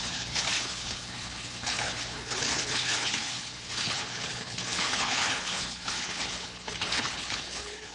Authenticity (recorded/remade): remade